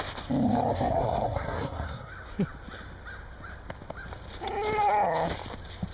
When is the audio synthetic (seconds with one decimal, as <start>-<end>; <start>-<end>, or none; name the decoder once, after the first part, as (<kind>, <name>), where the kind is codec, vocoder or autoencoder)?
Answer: 0.7-2.1 (codec, SNAC)